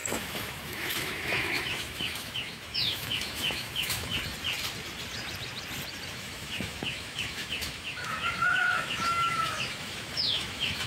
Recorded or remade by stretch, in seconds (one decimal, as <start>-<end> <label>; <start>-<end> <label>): 0.0-4.1 remade; 4.1-6.1 recorded; 6.1-10.9 remade